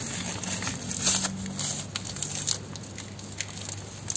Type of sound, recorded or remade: recorded